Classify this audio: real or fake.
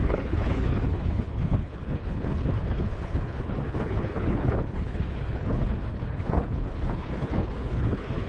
fake